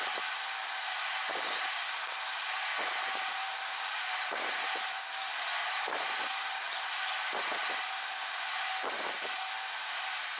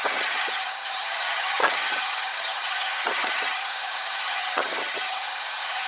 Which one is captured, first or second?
first